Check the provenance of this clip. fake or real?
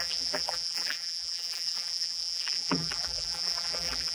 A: fake